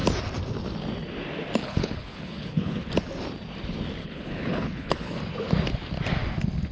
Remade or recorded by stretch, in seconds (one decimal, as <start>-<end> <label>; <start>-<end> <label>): 0.0-1.6 recorded; 1.6-2.9 remade; 2.9-4.0 recorded; 4.0-5.2 remade; 5.2-6.7 recorded